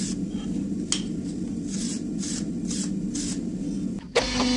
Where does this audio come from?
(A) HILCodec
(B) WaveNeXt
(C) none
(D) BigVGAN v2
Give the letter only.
C